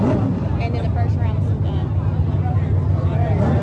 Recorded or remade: recorded